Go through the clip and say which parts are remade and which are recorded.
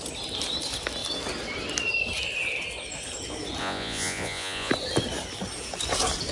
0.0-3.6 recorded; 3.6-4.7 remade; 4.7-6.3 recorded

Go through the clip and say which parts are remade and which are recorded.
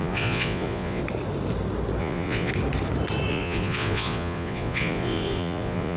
0.0-1.0 remade; 1.0-2.0 recorded; 2.0-2.5 remade; 2.5-3.3 recorded; 3.3-6.0 remade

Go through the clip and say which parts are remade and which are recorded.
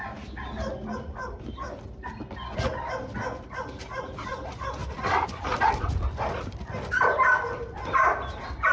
0.0-8.7 recorded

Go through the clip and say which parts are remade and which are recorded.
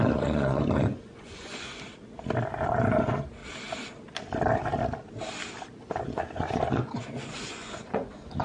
0.0-1.7 remade; 1.7-2.7 recorded; 2.7-3.4 remade; 3.4-6.0 recorded; 6.0-8.4 remade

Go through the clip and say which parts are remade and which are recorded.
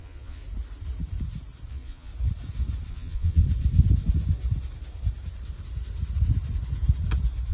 0.0-0.4 remade; 0.4-1.7 recorded; 1.7-2.1 remade; 2.1-2.9 recorded; 2.9-3.4 remade; 3.4-7.5 recorded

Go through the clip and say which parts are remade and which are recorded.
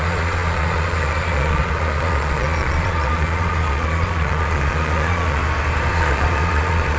0.0-5.4 remade; 5.4-5.9 recorded; 5.9-7.0 remade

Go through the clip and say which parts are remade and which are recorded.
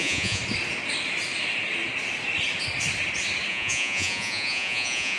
0.0-0.4 remade; 0.4-3.5 recorded; 3.5-5.2 remade